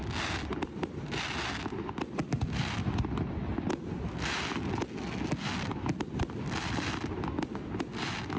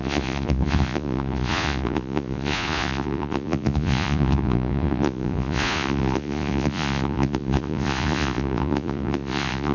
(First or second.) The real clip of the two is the first